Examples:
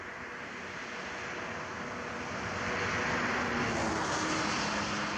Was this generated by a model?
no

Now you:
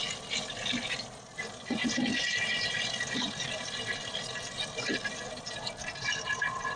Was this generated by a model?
no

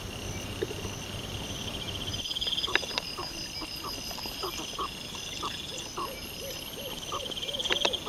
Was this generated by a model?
no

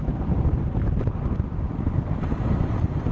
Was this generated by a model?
yes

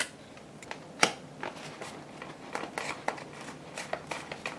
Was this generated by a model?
no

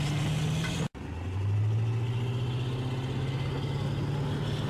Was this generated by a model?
no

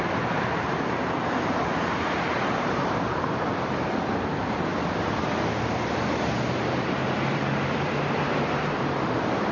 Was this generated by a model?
yes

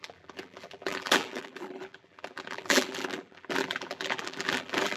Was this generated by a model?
yes